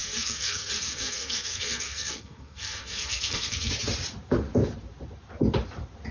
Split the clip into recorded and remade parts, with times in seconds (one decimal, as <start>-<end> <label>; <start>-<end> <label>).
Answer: 0.0-3.7 remade; 3.7-6.1 recorded